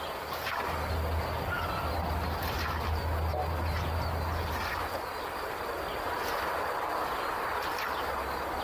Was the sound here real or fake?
fake